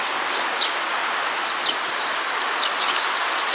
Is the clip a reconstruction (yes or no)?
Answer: no